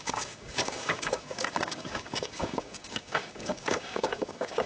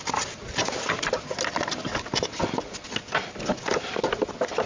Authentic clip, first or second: second